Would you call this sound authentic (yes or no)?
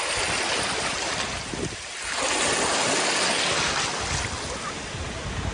yes